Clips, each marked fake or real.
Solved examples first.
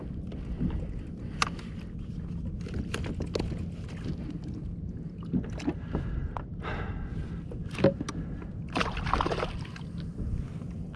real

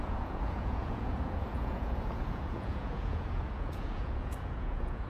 fake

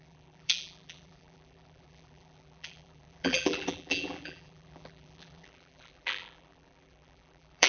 fake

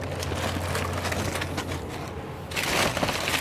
real